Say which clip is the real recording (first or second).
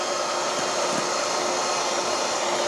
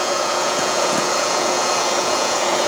first